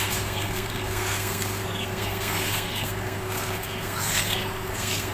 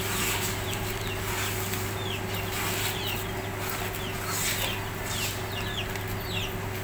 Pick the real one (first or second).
second